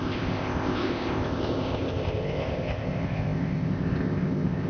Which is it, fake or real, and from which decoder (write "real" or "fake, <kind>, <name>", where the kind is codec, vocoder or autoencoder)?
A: fake, codec, ZipCodec